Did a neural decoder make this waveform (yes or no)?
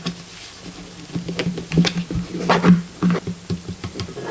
no